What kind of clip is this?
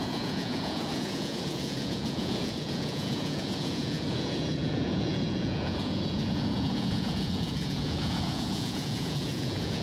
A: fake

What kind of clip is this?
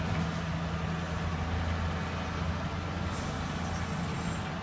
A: real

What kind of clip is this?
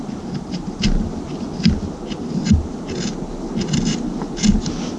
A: real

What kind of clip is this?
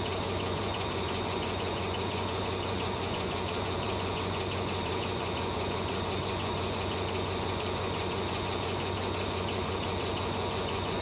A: fake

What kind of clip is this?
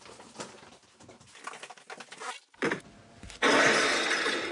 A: real